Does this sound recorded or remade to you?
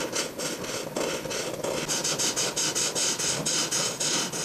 recorded